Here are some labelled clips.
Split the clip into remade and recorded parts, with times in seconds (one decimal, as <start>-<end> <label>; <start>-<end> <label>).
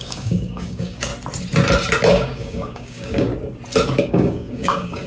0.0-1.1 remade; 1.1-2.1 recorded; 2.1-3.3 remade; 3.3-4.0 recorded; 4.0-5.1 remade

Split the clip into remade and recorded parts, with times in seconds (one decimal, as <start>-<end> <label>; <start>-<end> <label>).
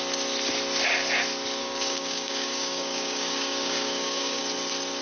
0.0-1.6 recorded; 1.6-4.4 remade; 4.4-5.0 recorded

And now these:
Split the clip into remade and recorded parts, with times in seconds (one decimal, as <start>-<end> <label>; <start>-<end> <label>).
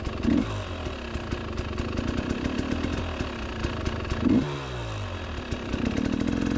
0.0-6.6 recorded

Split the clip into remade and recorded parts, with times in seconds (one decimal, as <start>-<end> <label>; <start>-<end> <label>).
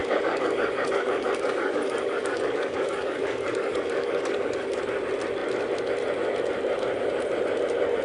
0.0-4.8 remade; 4.8-8.0 recorded